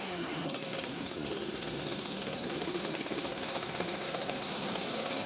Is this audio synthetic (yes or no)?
yes